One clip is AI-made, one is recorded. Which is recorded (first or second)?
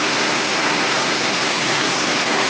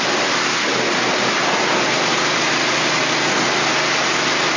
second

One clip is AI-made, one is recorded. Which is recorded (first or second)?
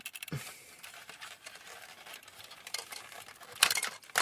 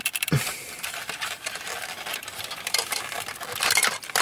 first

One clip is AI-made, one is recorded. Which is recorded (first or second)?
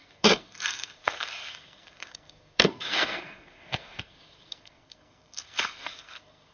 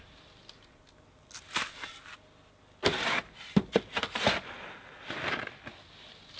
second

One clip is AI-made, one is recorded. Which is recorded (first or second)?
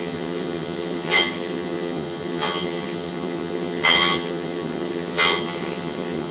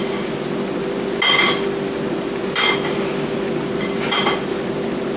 second